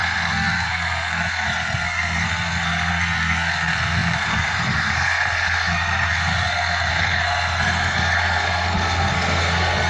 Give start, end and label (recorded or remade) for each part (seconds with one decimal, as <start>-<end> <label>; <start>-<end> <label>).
0.0-9.9 remade